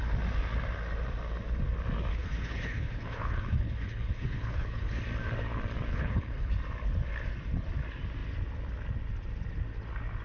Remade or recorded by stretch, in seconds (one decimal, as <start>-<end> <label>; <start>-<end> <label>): 0.0-2.1 recorded; 2.1-5.0 remade; 5.0-5.9 recorded; 5.9-6.5 remade; 6.5-10.2 recorded